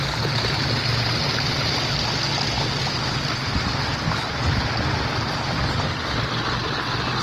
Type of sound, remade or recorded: recorded